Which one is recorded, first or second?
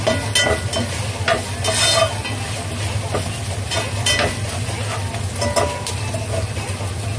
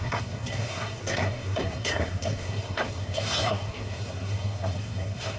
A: first